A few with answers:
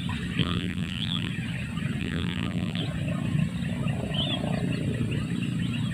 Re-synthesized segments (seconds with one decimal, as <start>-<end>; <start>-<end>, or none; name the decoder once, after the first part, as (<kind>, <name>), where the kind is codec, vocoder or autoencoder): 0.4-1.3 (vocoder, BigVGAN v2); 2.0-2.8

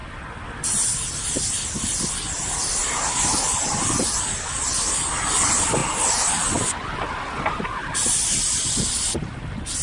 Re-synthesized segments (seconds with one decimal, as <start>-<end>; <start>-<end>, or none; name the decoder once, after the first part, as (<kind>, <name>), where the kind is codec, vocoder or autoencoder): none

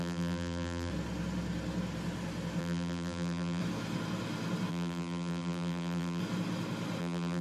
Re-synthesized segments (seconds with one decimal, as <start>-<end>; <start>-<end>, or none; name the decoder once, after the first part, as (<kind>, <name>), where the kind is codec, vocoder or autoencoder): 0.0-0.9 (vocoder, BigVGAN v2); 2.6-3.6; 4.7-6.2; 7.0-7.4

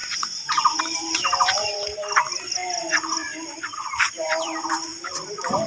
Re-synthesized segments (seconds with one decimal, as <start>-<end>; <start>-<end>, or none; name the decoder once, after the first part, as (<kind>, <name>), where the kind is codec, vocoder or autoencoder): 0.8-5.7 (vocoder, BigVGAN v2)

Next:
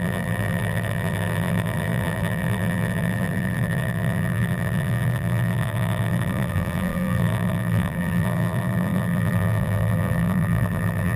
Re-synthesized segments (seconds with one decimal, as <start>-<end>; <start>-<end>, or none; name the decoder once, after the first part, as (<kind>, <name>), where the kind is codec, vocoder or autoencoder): 0.0-11.2 (vocoder, BigVGAN v2)